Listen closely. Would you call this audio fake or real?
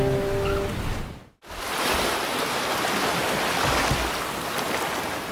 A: real